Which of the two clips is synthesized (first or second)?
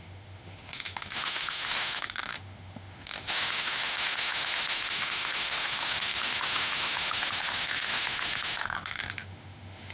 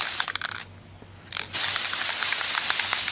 first